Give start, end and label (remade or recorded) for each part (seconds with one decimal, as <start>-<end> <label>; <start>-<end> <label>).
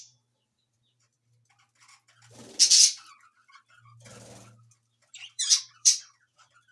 0.0-1.1 remade; 1.1-5.1 recorded; 5.1-6.7 remade